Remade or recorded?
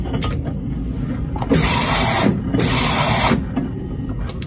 recorded